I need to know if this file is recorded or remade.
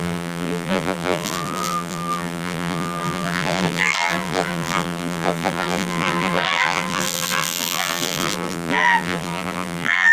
remade